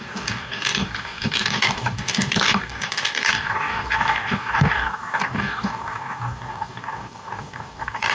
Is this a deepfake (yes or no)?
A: yes